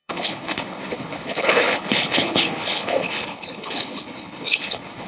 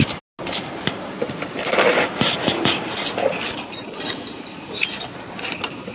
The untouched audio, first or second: second